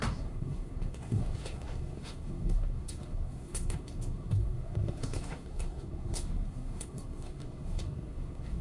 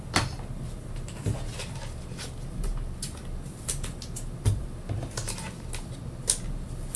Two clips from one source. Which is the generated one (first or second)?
first